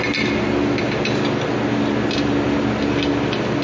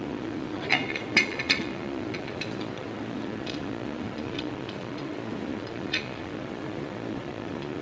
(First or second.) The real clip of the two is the first